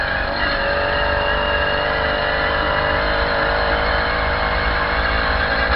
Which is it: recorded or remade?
recorded